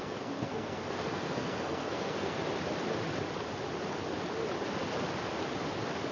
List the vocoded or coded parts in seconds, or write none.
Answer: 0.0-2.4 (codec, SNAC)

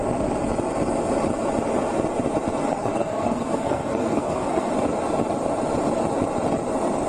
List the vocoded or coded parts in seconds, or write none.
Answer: 2.6-4.7 (codec, SNAC)

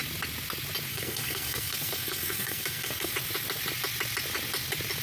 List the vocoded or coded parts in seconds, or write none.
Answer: 0.9-3.1 (codec, SNAC)

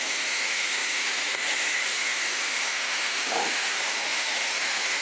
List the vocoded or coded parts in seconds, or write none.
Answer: 0.0-5.0 (autoencoder, DAC-VAE)

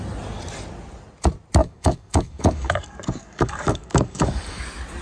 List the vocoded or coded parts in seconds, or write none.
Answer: 1.6-4.6 (codec, DAC)